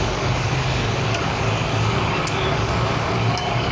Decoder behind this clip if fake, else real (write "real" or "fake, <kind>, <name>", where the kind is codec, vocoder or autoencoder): fake, codec, DAC